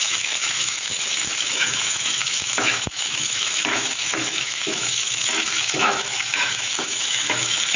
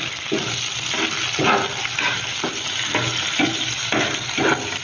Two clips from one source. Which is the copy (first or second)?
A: first